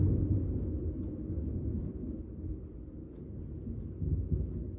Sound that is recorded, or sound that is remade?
recorded